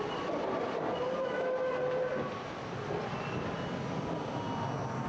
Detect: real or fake real